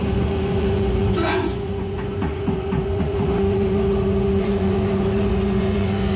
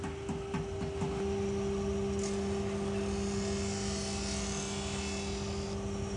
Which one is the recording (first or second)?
second